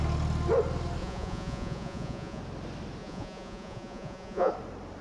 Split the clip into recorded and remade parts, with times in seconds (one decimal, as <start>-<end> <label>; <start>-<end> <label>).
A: 0.0-1.0 recorded; 1.0-2.4 remade; 2.4-3.0 recorded; 3.0-4.5 remade; 4.5-5.0 recorded